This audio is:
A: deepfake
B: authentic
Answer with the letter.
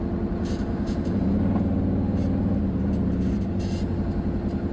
B